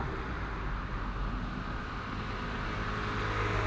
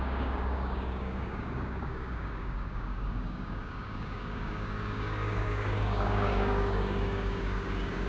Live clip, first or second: first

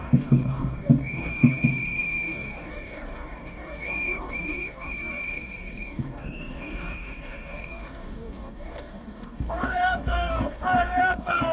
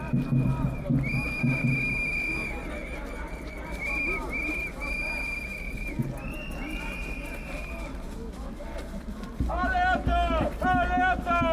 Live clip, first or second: second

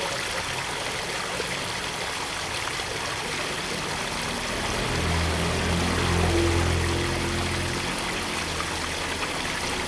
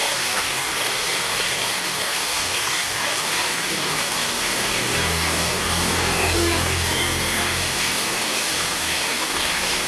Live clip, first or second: first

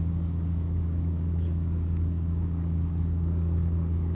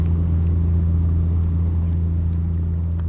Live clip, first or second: second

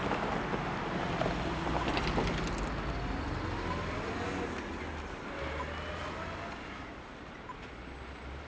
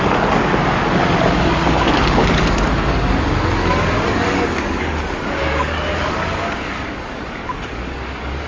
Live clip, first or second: first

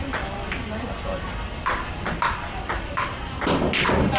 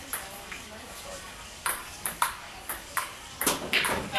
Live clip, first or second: first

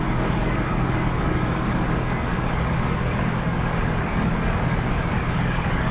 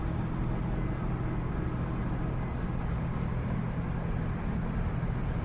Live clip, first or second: second